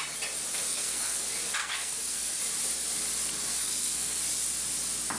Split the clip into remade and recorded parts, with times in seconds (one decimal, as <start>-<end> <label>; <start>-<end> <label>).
0.0-0.5 recorded; 0.5-1.2 remade; 1.2-1.6 recorded; 1.6-2.4 remade; 2.4-3.5 recorded; 3.5-4.2 remade; 4.2-5.2 recorded